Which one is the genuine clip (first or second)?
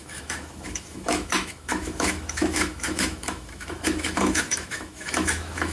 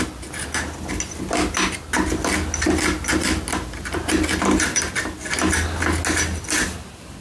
second